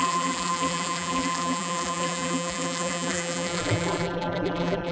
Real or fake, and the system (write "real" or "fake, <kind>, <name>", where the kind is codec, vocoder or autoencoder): fake, vocoder, BigVGAN v2